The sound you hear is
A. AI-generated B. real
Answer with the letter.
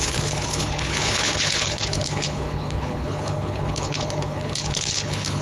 A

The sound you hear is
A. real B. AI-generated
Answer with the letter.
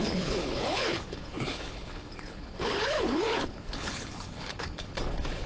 B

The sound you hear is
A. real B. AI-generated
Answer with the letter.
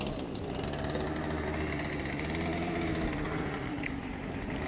A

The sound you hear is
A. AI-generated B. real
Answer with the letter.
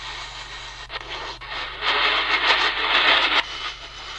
B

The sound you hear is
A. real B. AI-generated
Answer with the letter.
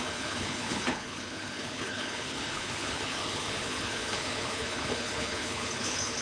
B